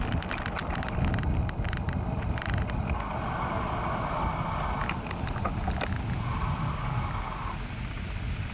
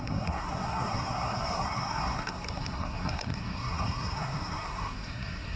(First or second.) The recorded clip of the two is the first